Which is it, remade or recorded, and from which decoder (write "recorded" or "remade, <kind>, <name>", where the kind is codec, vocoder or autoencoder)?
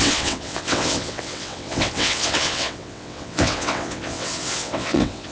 remade, vocoder, WaveNeXt